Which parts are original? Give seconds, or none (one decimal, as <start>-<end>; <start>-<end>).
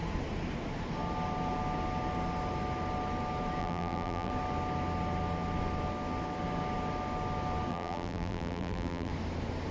0.0-3.6; 4.3-7.7; 9.1-9.7